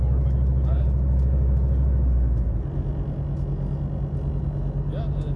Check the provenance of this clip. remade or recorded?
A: recorded